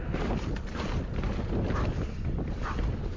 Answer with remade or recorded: recorded